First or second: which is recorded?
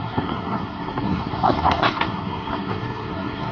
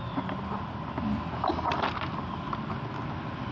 second